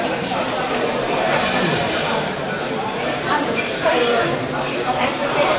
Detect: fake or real fake